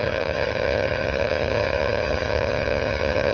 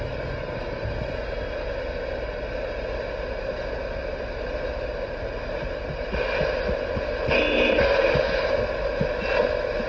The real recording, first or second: second